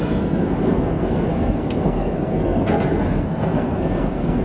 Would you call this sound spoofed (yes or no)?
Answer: yes